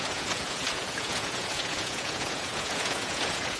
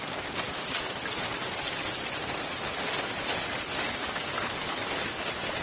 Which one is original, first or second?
second